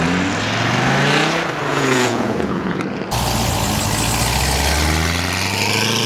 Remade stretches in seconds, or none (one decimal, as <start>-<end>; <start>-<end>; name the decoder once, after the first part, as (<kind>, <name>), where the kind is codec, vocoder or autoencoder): 1.7-2.8 (vocoder, Vocos)